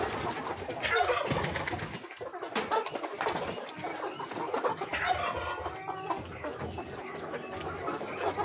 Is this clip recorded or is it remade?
recorded